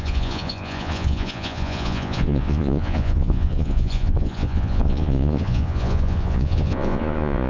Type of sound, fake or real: fake